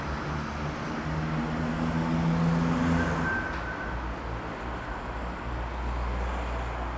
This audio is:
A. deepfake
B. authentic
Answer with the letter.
B